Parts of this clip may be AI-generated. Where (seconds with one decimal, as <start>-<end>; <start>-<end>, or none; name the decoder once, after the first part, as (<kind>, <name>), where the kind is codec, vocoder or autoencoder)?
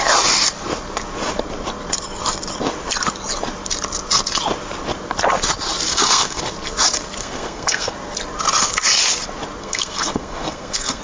5.9-6.4 (codec, SNAC); 7.2-7.9; 9.6-11.0